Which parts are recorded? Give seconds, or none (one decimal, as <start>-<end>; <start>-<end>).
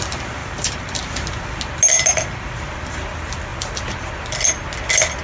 0.0-0.4; 1.1-2.1; 3.1-3.5; 4.1-5.2